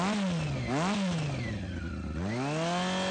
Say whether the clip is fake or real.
real